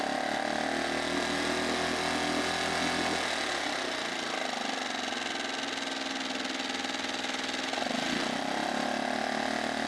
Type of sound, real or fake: real